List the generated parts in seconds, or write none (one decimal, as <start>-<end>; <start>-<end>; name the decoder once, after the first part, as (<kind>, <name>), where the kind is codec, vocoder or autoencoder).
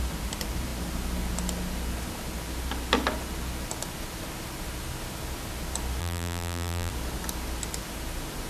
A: 6.0-6.9 (vocoder, BigVGAN v2)